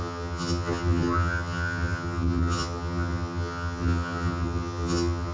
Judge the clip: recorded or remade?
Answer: remade